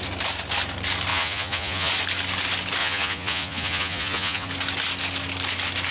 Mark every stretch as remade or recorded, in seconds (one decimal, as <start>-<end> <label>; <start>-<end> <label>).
0.0-1.1 recorded; 1.1-1.9 remade; 1.9-2.8 recorded; 2.8-4.5 remade; 4.5-5.9 recorded